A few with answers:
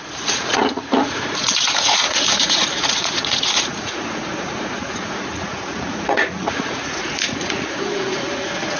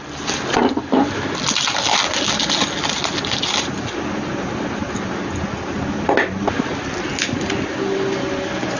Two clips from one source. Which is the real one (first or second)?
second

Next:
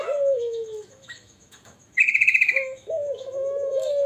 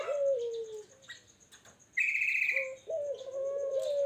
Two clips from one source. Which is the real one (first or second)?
second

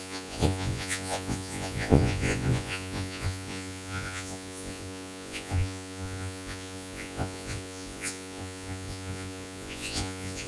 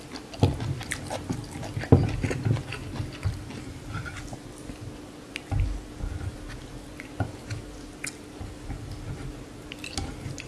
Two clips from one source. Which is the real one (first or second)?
second